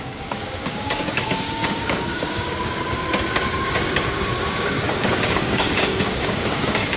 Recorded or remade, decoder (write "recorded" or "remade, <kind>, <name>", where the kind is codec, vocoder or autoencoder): remade, codec, DAC